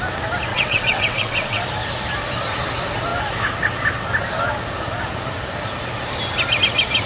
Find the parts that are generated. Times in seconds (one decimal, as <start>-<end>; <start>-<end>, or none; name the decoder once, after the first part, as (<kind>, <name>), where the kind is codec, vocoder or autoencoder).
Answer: 0.5-1.6 (vocoder, WaveNeXt)